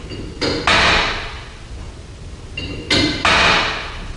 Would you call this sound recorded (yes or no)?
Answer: yes